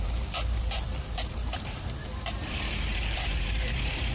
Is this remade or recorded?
remade